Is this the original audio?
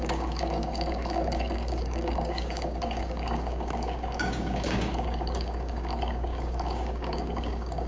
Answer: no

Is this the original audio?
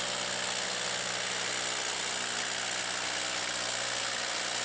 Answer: yes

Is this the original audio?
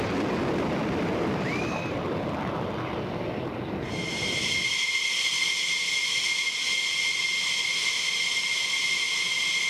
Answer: yes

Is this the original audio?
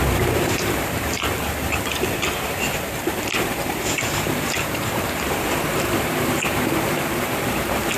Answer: no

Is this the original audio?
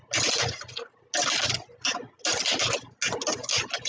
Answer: yes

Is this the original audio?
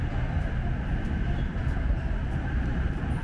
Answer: yes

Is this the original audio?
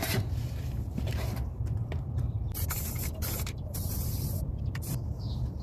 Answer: no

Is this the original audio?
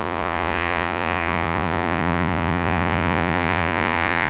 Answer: no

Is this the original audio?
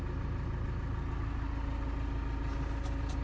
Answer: yes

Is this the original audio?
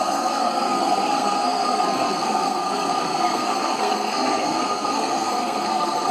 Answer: no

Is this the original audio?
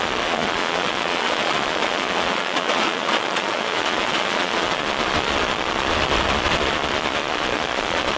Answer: no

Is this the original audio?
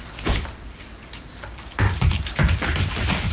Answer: no